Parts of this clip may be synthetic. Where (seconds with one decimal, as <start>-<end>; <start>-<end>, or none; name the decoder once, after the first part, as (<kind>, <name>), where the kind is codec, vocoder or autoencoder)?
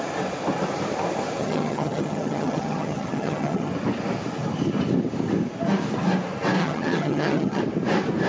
1.4-3.7 (vocoder, HiFi-GAN); 6.6-7.6